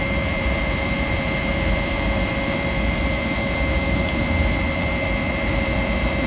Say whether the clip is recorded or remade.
remade